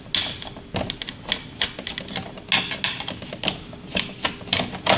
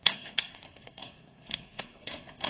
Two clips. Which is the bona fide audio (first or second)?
first